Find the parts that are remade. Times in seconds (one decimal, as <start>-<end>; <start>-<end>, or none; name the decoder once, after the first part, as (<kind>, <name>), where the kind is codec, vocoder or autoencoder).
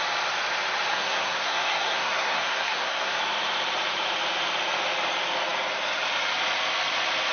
0.9-3.2 (codec, SNAC)